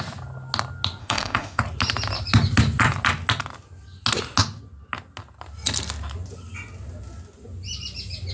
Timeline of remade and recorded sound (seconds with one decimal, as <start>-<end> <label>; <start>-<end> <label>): 0.0-1.0 recorded; 1.0-1.6 remade; 1.6-8.3 recorded